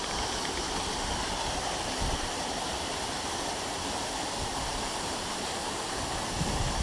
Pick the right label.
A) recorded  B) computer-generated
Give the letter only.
B